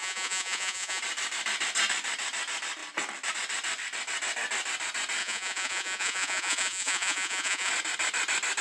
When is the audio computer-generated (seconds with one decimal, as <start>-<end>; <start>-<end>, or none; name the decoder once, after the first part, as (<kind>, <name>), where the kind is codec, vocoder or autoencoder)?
0.0-1.0 (vocoder, Vocos); 5.2-7.7